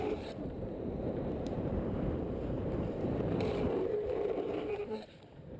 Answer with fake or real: fake